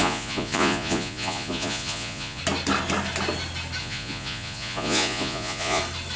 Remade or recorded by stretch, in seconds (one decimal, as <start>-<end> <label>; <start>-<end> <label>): 0.0-2.4 remade; 2.4-3.8 recorded; 3.8-5.8 remade; 5.8-6.2 recorded